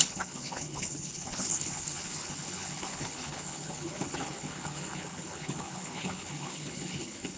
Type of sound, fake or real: fake